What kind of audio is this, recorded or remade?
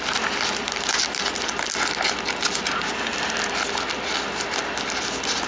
recorded